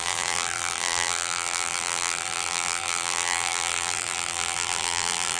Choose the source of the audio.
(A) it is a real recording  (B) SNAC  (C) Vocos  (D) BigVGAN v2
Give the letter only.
D